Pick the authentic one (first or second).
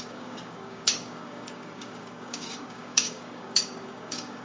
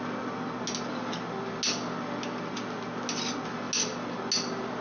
second